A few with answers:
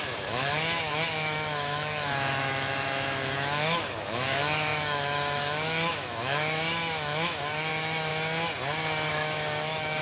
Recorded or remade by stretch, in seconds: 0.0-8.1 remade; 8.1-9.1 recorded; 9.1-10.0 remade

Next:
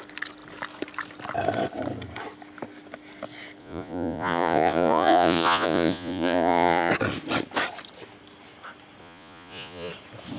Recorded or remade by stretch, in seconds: 0.0-3.6 recorded; 3.6-6.9 remade; 6.9-9.0 recorded; 9.0-9.9 remade; 9.9-10.4 recorded

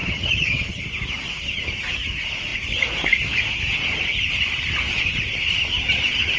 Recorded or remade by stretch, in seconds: 0.0-0.8 remade; 0.8-6.4 recorded

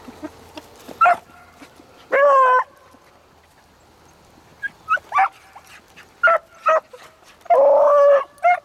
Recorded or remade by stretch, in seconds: 0.0-8.6 recorded

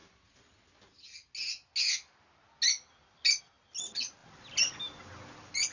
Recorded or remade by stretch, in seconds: 0.0-5.7 recorded

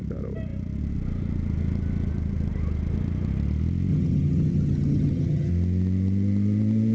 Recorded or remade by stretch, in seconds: 0.0-3.9 recorded; 3.9-5.5 remade; 5.5-6.9 recorded

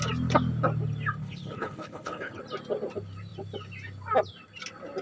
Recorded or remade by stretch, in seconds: 0.0-1.2 recorded; 1.2-2.4 remade; 2.4-5.0 recorded